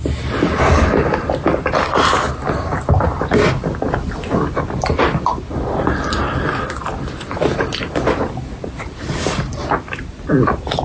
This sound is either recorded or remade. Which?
remade